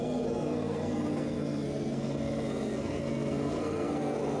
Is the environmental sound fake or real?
fake